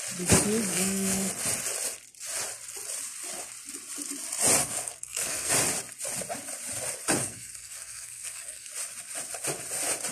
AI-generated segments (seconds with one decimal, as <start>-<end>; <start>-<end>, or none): 0.7-1.3; 4.6-5.5; 7.2-8.7